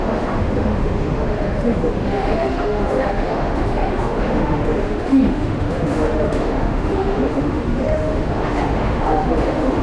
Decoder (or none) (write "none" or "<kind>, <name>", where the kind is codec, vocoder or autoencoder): autoencoder, DAC-VAE